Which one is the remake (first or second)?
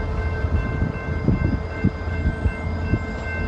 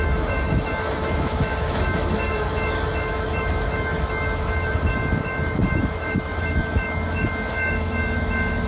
second